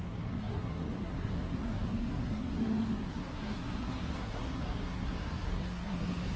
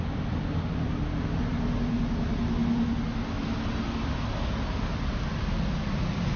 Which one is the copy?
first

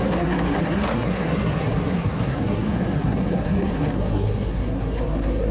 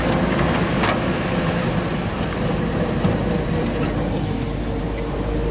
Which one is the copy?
first